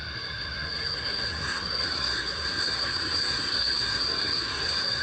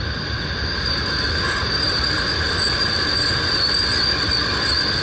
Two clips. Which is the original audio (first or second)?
second